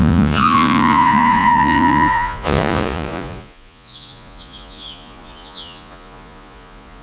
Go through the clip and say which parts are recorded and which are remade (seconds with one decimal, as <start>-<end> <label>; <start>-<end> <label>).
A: 0.0-7.0 remade